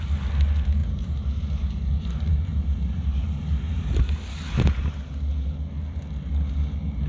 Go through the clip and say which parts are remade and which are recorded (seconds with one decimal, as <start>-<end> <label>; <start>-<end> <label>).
0.0-0.8 recorded; 0.8-4.0 remade; 4.0-7.1 recorded